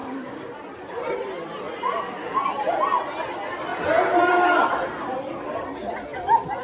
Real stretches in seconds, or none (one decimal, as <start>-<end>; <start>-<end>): 0.5-6.6